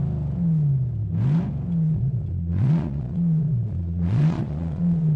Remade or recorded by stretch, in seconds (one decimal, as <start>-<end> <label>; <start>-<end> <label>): 0.0-1.9 recorded; 1.9-5.2 remade